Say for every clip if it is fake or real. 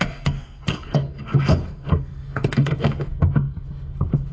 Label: fake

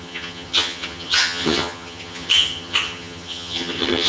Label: fake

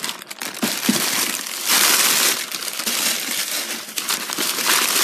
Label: fake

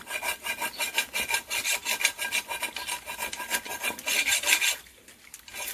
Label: real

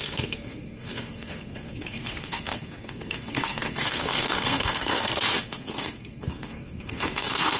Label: fake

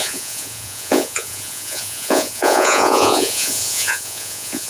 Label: fake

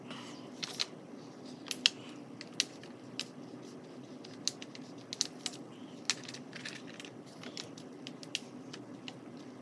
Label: real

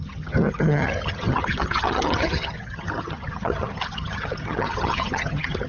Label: fake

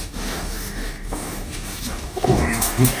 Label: fake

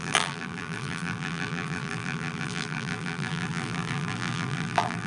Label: fake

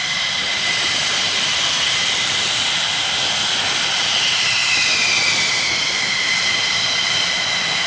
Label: real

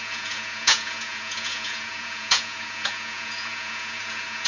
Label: fake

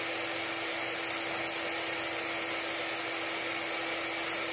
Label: real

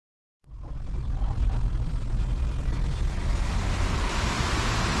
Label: real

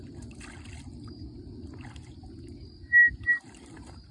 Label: real